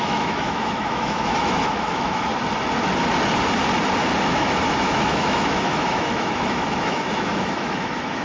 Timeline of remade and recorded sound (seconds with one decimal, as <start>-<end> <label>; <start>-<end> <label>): 0.0-2.3 remade; 2.3-4.2 recorded; 4.2-8.2 remade